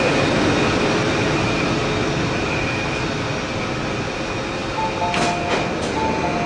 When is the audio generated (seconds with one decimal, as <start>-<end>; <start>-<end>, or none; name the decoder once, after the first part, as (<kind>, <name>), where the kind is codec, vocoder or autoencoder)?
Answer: none